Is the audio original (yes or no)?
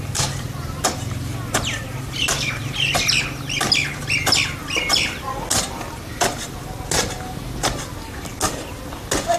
yes